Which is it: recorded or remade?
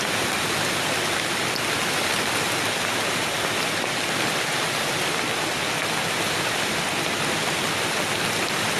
recorded